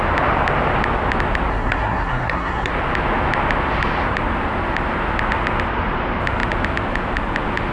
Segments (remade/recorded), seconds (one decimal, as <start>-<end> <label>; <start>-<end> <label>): 0.0-1.5 recorded; 1.5-2.7 remade; 2.7-7.7 recorded

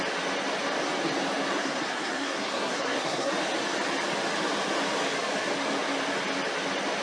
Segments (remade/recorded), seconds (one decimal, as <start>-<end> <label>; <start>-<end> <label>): 0.0-1.5 recorded; 1.5-3.3 remade; 3.3-7.0 recorded

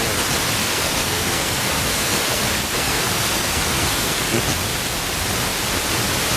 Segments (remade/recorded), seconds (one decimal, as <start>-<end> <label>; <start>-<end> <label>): 0.0-0.6 recorded; 0.6-4.4 remade; 4.4-6.4 recorded

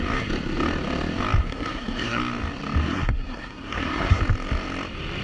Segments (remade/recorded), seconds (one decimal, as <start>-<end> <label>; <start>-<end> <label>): 0.0-1.4 recorded; 1.4-2.2 remade; 2.2-2.8 recorded; 2.8-4.2 remade; 4.2-5.2 recorded